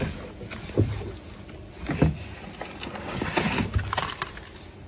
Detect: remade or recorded recorded